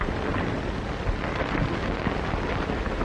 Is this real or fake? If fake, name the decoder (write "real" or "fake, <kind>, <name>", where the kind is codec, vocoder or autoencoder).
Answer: real